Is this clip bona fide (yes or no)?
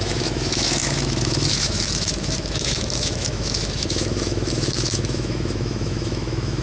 no